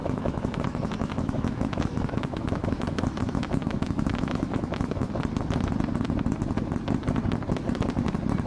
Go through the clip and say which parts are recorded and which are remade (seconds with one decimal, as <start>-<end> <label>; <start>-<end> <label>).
0.0-5.1 remade; 5.1-8.5 recorded